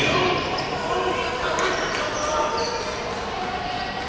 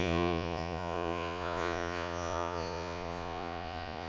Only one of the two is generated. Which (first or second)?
second